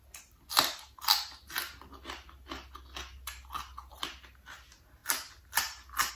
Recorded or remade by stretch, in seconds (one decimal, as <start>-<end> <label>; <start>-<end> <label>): 0.0-6.1 recorded